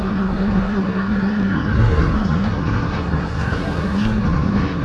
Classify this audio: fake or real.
fake